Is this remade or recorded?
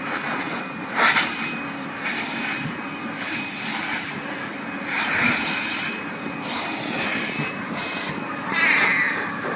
remade